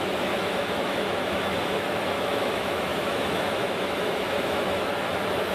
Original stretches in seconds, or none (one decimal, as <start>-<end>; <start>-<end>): none